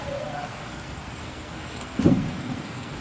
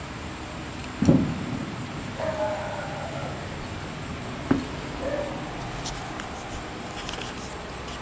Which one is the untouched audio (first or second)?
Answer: second